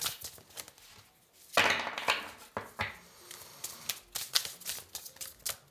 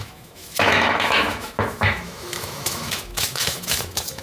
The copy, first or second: second